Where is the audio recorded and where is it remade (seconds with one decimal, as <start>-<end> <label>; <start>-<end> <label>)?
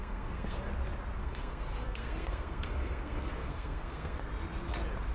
0.0-0.6 remade; 0.6-1.2 recorded; 1.2-4.3 remade; 4.3-5.1 recorded